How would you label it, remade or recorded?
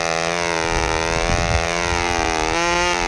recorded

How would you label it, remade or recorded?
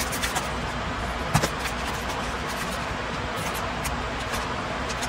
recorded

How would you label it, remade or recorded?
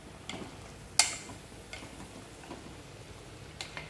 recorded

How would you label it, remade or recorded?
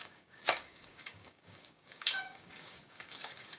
remade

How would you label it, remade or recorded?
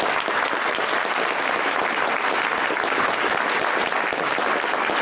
remade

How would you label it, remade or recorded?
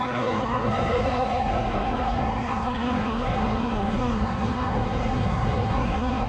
remade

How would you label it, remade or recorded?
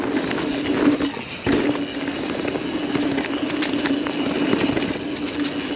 recorded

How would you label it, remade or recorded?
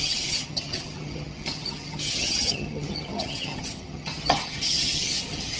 remade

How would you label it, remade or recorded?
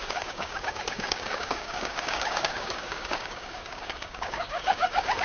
remade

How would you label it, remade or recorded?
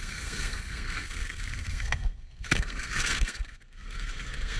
remade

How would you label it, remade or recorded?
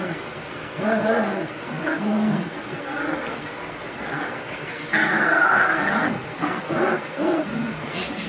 remade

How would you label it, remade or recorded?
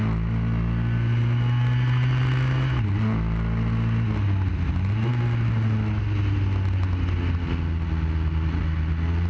recorded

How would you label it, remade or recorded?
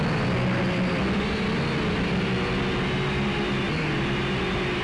recorded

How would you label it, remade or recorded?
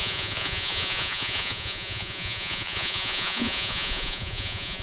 remade